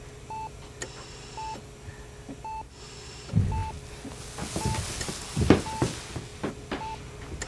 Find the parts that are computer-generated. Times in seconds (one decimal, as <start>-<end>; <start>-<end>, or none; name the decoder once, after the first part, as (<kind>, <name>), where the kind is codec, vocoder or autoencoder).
none